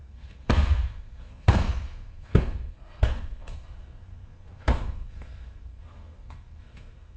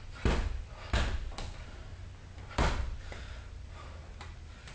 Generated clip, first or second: first